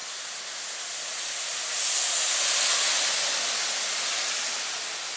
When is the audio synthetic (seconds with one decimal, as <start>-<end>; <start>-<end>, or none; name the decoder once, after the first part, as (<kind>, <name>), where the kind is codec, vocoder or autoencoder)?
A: none